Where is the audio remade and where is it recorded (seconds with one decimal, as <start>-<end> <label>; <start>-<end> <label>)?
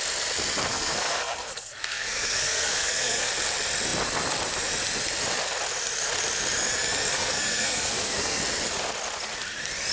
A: 0.0-0.7 recorded; 0.7-3.3 remade; 3.3-7.1 recorded; 7.1-8.4 remade; 8.4-9.9 recorded